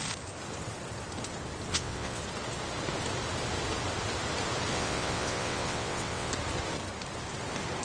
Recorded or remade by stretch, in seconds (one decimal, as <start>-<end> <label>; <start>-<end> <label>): 0.0-1.7 recorded; 1.7-2.2 remade; 2.2-4.7 recorded; 4.7-6.3 remade; 6.3-7.8 recorded